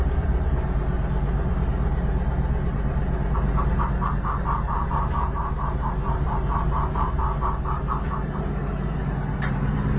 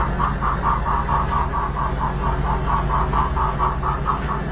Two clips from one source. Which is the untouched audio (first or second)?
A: second